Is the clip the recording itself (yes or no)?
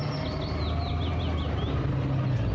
yes